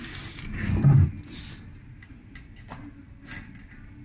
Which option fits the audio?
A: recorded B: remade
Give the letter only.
A